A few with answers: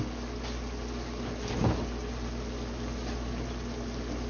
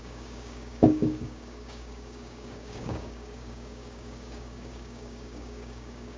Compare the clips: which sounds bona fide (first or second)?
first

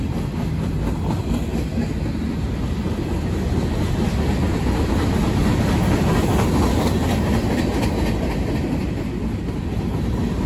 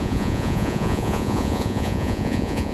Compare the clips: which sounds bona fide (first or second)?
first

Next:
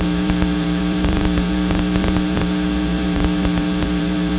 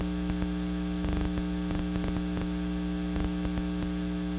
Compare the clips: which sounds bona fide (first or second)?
second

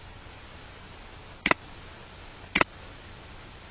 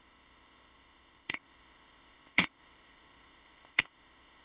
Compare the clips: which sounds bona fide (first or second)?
first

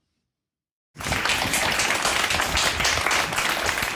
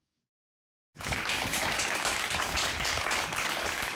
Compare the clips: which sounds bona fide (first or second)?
first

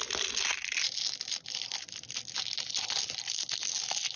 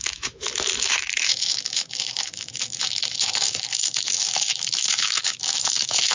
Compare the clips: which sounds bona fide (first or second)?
first